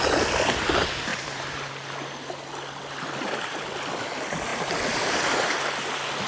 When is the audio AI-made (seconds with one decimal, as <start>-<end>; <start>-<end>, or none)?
1.1-1.7